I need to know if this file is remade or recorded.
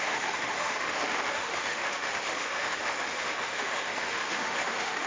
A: remade